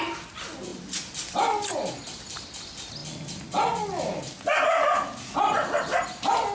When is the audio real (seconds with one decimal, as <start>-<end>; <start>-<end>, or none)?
0.0-6.5